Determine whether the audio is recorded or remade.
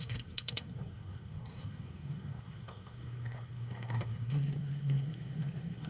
remade